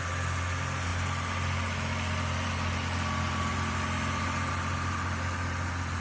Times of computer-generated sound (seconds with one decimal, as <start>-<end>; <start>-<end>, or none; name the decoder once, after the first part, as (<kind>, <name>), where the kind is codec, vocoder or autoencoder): none